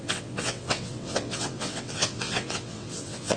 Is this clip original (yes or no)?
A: no